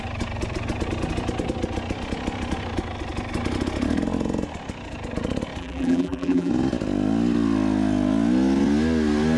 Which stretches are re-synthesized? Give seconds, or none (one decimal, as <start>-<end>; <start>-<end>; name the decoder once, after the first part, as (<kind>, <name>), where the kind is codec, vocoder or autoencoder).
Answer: 5.6-6.5 (vocoder, BigVGAN v2)